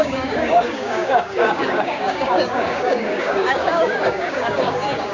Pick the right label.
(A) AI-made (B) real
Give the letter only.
A